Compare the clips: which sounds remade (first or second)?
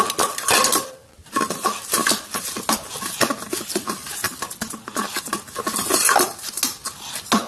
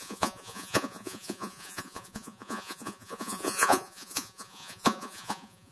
second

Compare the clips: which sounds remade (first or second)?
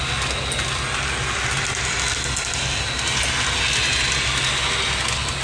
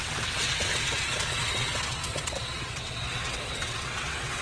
second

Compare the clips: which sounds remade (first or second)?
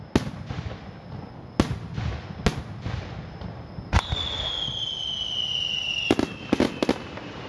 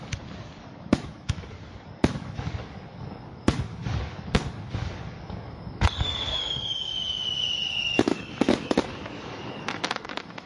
second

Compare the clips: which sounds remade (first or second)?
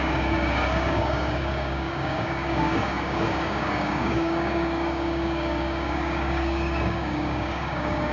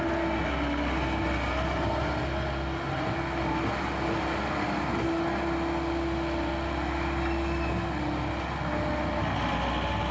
first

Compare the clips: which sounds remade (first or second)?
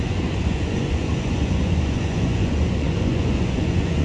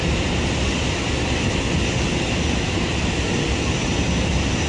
first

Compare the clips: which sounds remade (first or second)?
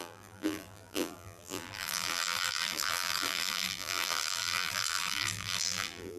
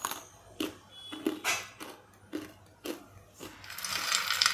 first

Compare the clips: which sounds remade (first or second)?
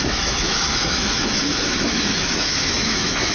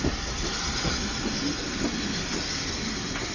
first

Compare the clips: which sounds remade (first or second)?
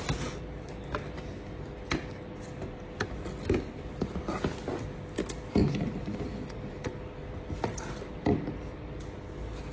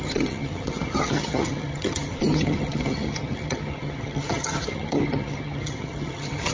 second